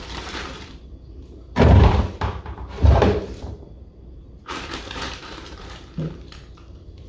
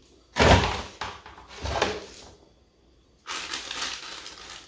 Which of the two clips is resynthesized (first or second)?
first